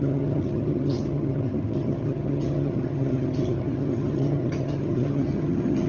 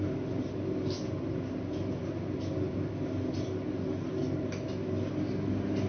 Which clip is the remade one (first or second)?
first